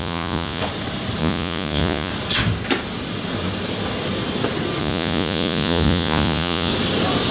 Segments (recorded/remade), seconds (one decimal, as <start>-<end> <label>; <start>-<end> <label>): 0.0-0.6 remade; 0.6-1.2 recorded; 1.2-2.1 remade; 2.1-4.8 recorded; 4.8-6.7 remade; 6.7-7.3 recorded